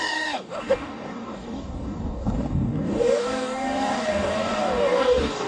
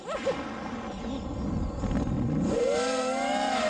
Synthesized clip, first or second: first